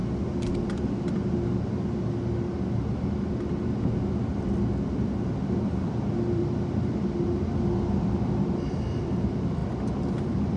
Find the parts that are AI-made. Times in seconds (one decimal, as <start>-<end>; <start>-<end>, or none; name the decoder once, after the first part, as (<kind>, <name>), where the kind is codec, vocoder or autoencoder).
4.4-6.4 (vocoder, BigVGAN v2); 7.2-9.6